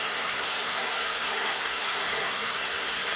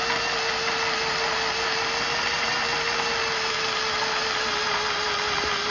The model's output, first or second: first